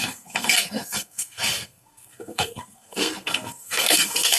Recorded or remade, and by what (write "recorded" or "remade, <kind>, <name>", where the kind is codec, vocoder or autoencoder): remade, codec, SNAC